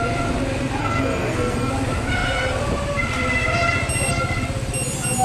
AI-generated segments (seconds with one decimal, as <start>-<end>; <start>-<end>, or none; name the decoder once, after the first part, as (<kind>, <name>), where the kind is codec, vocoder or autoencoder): 0.8-1.7 (codec, SNAC)